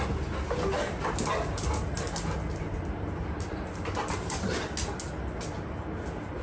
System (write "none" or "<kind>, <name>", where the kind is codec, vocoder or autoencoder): none